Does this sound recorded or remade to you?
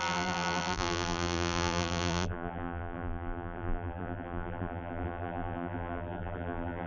remade